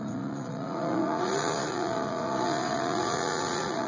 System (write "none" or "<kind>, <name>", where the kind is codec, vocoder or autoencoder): vocoder, Vocos